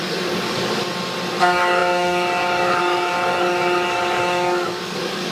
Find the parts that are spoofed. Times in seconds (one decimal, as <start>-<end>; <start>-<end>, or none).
0.0-0.8; 1.4-5.3

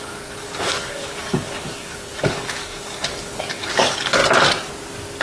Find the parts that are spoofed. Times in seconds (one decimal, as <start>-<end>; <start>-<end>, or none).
0.0-4.2

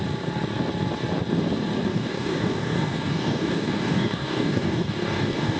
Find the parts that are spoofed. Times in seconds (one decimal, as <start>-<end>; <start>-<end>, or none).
1.9-5.6

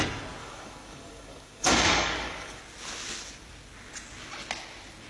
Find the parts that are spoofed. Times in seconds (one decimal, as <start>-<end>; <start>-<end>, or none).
0.4-2.6

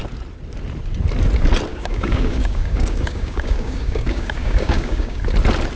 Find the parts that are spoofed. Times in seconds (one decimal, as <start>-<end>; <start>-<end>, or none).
1.7-5.2

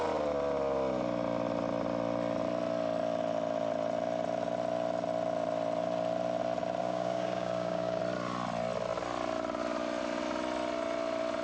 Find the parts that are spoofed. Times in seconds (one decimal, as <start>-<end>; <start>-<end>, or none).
6.8-8.0

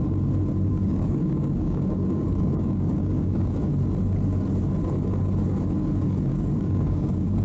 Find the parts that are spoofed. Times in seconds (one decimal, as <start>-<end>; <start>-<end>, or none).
0.7-3.7; 6.3-7.4

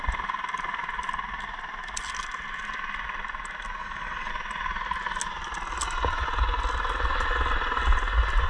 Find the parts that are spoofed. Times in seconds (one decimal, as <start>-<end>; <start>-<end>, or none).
3.8-4.3